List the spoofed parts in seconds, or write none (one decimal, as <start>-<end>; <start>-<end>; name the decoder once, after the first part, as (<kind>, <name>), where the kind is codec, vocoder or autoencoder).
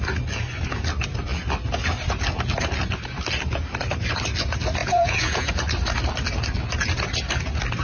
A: 4.8-5.5 (vocoder, Vocos)